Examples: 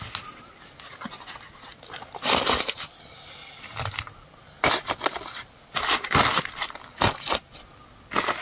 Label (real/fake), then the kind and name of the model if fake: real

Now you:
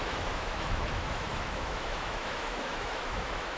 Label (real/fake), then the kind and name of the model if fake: fake, autoencoder, DAC-VAE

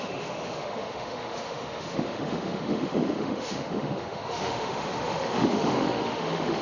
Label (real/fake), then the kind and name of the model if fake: fake, autoencoder, DAC-VAE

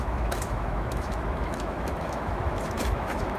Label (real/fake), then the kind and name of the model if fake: fake, autoencoder, DAC-VAE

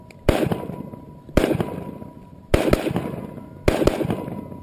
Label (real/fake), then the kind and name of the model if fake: real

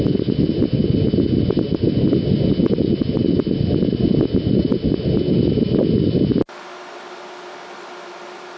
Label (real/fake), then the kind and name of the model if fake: real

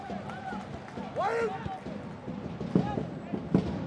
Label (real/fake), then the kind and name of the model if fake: real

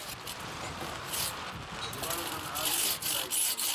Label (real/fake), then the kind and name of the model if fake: real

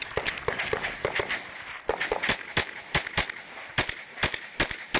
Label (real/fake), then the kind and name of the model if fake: real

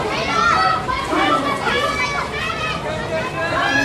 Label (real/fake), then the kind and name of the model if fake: real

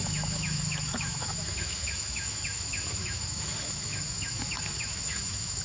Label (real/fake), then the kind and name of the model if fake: fake, autoencoder, DAC-VAE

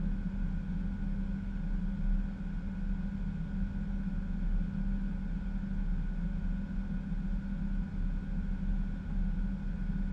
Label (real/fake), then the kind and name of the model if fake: real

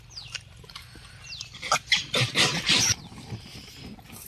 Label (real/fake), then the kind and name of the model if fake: real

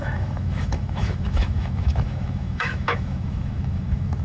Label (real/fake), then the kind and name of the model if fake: fake, autoencoder, DAC-VAE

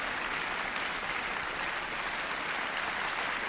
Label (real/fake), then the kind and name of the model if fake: real